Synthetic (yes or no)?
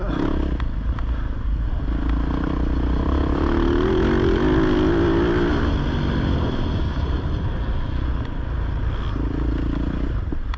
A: no